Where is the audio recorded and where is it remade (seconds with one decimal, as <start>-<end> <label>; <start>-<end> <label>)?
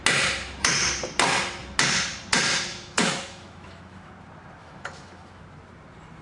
0.0-2.7 recorded; 2.7-4.1 remade; 4.1-4.6 recorded; 4.6-5.4 remade; 5.4-6.2 recorded